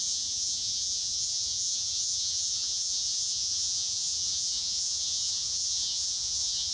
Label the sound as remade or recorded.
remade